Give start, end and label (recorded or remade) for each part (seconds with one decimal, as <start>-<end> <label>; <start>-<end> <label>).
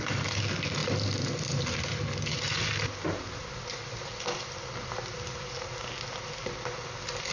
0.0-7.3 recorded